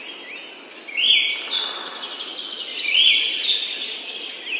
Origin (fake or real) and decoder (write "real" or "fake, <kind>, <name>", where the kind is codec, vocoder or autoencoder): real